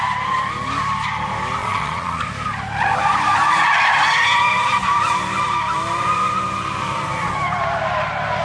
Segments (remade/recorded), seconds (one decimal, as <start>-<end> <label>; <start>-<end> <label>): 0.0-1.6 recorded; 1.6-2.2 remade; 2.2-8.4 recorded

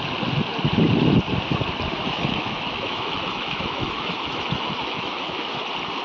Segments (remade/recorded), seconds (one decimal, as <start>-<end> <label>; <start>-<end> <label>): 0.0-2.0 recorded; 2.0-5.6 remade; 5.6-6.0 recorded

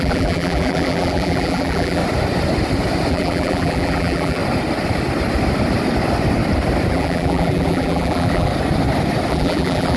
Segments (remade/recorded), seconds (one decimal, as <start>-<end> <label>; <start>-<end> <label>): 0.0-2.0 remade; 2.0-3.1 recorded; 3.1-4.4 remade; 4.4-6.9 recorded; 6.9-8.5 remade; 8.5-9.3 recorded; 9.3-10.0 remade

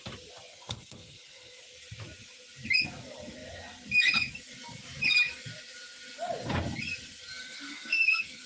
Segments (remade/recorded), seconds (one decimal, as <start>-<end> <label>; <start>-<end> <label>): 0.0-0.5 recorded; 0.5-1.6 remade; 1.6-7.4 recorded; 7.4-8.5 remade